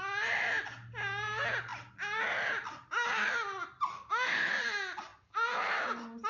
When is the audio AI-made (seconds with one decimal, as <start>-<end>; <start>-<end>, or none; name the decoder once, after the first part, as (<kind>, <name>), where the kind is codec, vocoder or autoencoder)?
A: 3.9-4.5 (autoencoder, DAC-VAE)